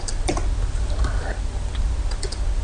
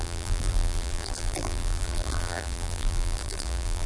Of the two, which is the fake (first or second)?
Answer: second